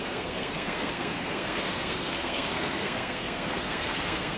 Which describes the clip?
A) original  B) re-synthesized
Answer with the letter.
B